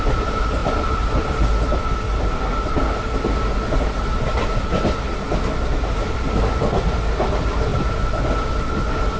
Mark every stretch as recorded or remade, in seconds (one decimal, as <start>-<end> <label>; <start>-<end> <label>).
0.0-9.2 recorded